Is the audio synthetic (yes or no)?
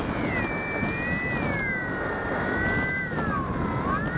no